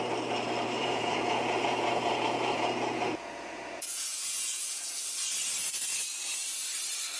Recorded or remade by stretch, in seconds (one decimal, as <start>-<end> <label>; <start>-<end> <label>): 0.0-0.8 recorded; 0.8-5.1 remade; 5.1-7.2 recorded